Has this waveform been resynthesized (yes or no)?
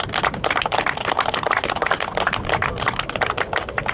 no